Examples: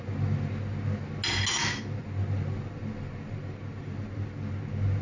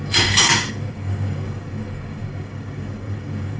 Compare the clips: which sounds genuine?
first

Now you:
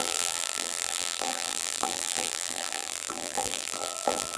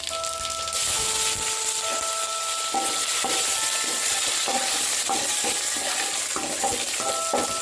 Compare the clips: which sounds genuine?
second